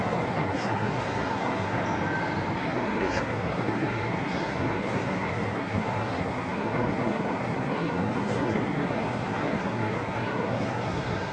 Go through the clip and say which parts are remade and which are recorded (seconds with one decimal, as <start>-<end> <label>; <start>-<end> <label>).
0.0-1.8 remade; 1.8-2.6 recorded; 2.6-11.3 remade